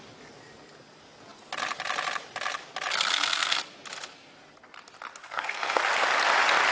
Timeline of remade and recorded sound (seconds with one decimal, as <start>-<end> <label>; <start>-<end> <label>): 0.0-3.1 recorded; 3.1-3.6 remade; 3.6-5.2 recorded; 5.2-5.8 remade; 5.8-6.7 recorded